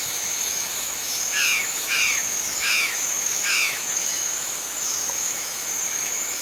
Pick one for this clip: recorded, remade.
remade